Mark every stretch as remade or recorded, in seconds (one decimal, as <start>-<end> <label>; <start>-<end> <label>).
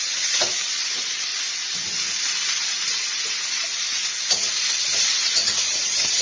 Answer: 0.0-1.3 remade; 1.3-5.0 recorded; 5.0-6.2 remade